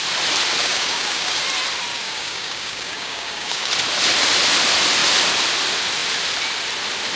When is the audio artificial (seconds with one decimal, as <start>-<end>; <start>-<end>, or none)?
0.6-1.4; 1.9-3.7